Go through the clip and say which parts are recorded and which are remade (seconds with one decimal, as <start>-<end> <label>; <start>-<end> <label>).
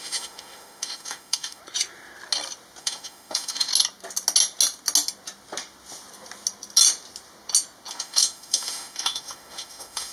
0.0-1.6 remade; 1.6-2.8 recorded; 2.8-3.7 remade; 3.7-7.9 recorded; 7.9-10.1 remade